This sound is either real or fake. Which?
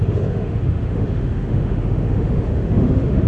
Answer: fake